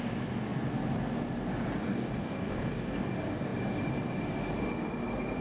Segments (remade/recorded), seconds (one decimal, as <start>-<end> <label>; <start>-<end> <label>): 0.0-1.8 recorded; 1.8-3.1 remade; 3.1-5.4 recorded